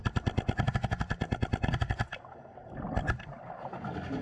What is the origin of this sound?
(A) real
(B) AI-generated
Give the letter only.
A